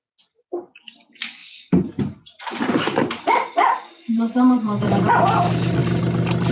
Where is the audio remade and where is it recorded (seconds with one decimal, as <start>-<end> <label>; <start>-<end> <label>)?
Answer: 0.0-1.4 recorded; 1.4-5.1 remade; 5.1-6.5 recorded